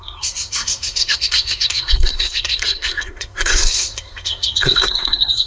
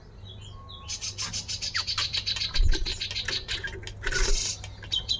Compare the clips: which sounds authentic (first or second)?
second